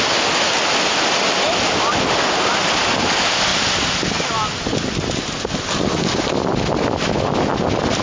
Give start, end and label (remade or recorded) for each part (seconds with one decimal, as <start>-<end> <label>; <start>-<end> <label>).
0.0-8.0 recorded